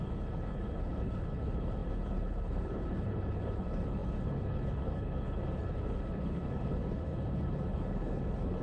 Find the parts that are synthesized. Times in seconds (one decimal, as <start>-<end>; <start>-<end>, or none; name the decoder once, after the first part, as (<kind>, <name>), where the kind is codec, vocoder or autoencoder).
0.0-8.6 (codec, HILCodec)